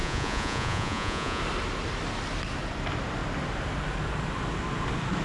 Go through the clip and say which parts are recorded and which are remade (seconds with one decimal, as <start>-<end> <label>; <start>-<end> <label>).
0.0-1.4 remade; 1.4-5.2 recorded